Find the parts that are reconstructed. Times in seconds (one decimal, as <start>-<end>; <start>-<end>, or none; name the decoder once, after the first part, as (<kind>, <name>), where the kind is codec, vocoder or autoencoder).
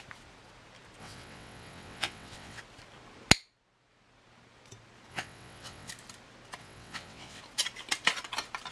1.0-2.6 (vocoder, WaveNeXt); 5.1-5.9; 6.6-7.4